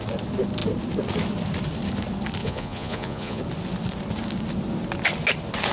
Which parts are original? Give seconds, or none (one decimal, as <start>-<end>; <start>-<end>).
0.0-2.4; 3.4-5.7